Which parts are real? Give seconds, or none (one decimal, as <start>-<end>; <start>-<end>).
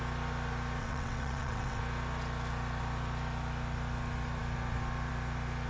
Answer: 0.0-0.8; 1.8-5.7